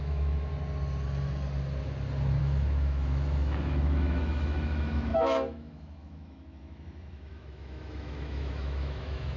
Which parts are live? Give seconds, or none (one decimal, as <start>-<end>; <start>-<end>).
0.5-2.4